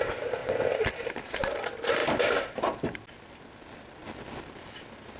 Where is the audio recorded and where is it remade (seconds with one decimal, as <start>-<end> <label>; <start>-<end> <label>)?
0.0-5.2 recorded